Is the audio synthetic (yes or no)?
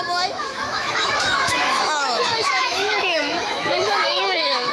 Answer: yes